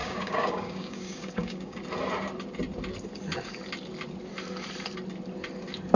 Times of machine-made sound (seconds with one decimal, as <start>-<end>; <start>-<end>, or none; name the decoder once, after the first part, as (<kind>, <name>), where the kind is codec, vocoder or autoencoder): 0.0-1.8 (codec, DAC)